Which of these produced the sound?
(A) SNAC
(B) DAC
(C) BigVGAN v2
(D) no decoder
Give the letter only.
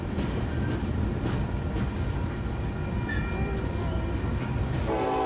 D